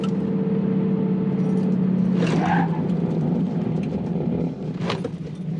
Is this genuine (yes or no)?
yes